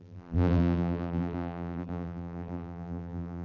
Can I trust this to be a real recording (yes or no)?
no